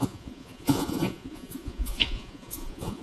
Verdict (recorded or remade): remade